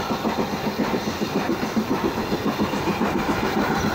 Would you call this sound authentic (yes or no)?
yes